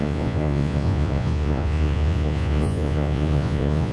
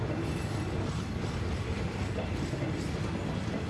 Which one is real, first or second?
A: second